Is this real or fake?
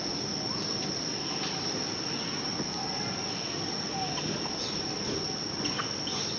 real